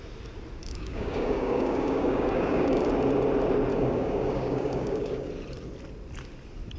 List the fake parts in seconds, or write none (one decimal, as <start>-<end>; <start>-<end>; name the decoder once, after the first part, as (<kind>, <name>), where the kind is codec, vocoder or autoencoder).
0.6-2.9 (codec, DAC); 3.7-5.3